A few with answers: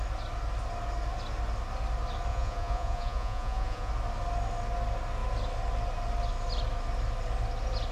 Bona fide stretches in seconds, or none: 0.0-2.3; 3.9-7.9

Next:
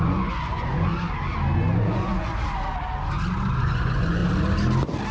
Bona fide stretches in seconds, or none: 0.9-1.8; 2.3-3.6; 4.2-5.1